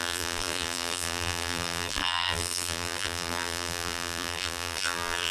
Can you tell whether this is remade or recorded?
remade